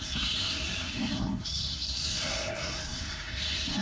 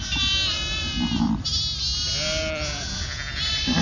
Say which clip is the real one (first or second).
second